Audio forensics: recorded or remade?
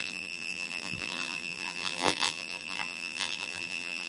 remade